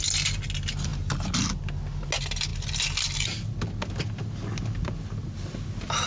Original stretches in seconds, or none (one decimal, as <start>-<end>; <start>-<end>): 0.0-6.1